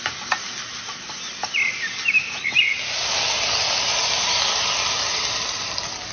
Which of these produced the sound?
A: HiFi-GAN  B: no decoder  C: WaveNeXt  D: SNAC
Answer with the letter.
B